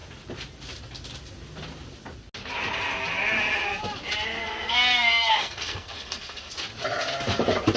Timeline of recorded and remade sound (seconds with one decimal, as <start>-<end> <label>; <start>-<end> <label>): 0.0-4.4 recorded; 4.4-6.5 remade; 6.5-7.8 recorded